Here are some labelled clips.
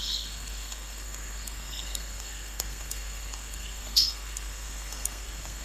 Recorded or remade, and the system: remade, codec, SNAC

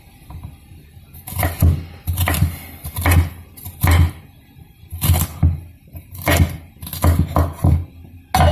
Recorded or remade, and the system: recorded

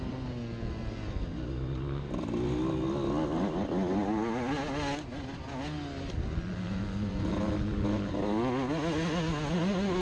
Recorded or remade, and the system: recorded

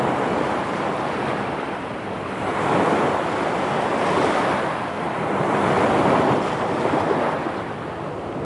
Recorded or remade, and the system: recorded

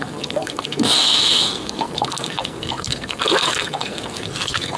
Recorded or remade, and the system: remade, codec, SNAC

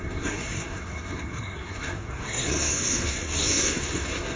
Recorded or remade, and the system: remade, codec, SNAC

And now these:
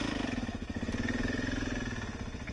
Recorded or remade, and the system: recorded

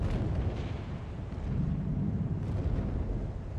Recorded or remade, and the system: recorded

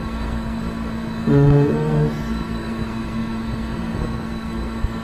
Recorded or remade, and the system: remade, codec, SNAC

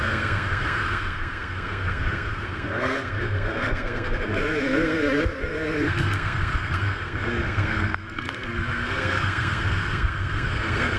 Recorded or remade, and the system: remade, codec, SNAC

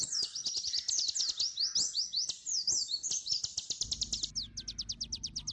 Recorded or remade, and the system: recorded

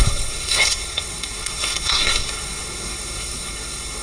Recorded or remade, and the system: remade, codec, SNAC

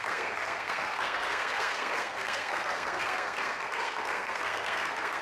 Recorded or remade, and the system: remade, codec, SNAC